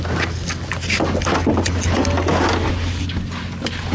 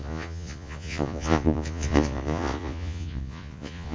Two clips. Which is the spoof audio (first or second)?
second